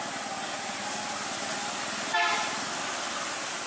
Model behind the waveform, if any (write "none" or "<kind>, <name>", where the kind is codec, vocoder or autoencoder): none